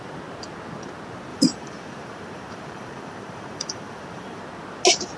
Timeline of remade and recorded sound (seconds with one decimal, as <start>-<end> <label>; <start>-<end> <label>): 0.0-1.3 recorded; 1.3-4.4 remade; 4.4-5.2 recorded